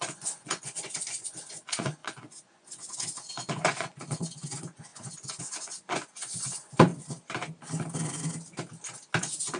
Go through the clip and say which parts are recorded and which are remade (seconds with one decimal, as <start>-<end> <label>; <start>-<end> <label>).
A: 0.0-6.9 remade; 6.9-9.2 recorded; 9.2-9.6 remade